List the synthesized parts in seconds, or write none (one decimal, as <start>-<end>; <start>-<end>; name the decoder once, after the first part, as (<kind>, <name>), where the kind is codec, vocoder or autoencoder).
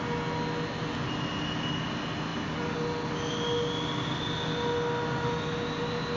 none